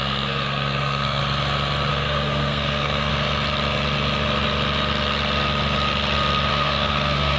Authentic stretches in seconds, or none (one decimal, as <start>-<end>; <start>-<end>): 1.2-1.9; 3.1-6.5